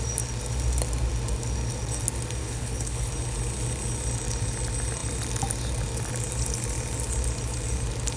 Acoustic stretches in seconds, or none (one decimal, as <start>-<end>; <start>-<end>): 0.0-2.4; 3.1-8.2